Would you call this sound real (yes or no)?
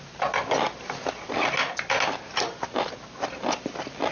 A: yes